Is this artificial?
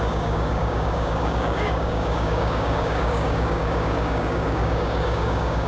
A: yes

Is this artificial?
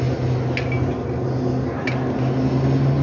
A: no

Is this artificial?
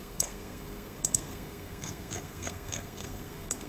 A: yes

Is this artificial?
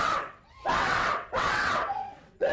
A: yes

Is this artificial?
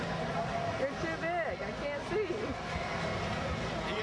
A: no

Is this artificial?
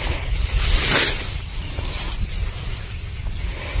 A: no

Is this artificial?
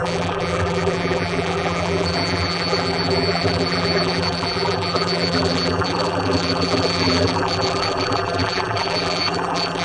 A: yes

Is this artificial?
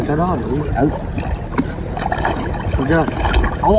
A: no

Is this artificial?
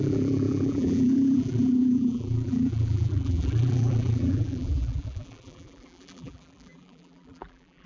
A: yes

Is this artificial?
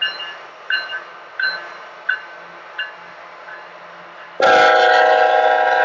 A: no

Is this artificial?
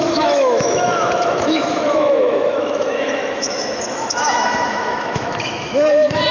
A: yes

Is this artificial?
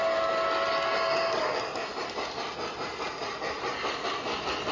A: no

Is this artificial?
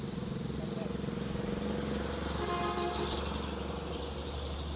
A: no